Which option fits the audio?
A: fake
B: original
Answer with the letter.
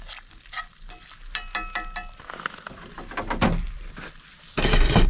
B